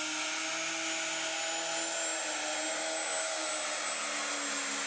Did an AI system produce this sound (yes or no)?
no